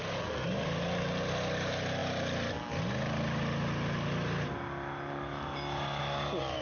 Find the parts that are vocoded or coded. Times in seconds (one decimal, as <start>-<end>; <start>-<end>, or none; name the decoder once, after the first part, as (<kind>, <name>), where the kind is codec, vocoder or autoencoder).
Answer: none